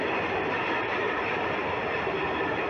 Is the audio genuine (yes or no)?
yes